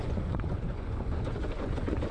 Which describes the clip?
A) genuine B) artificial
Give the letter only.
B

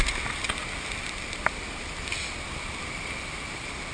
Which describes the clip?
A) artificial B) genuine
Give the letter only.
B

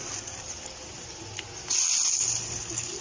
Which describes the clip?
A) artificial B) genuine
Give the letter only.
B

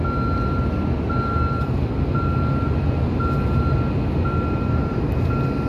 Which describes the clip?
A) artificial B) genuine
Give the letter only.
B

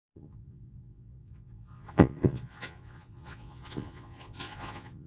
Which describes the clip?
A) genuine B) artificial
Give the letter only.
B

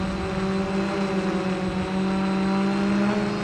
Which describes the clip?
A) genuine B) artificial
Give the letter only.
A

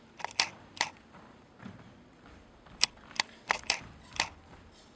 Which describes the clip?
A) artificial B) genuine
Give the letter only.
B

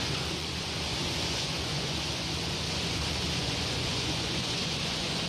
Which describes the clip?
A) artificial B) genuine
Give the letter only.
A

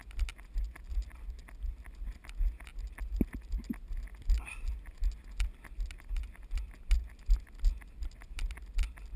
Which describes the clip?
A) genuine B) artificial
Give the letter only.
A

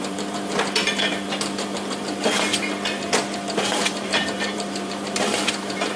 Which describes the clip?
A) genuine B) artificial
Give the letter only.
B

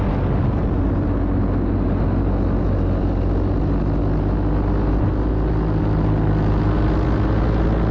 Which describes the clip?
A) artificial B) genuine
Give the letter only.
B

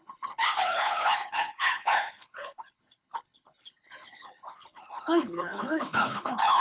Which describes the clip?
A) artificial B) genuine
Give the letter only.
A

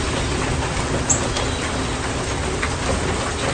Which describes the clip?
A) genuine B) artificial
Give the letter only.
A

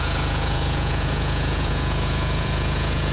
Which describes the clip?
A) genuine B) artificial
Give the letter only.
B